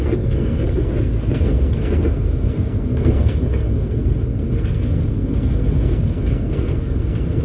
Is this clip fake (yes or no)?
yes